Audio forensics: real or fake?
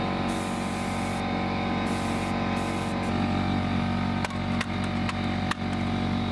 real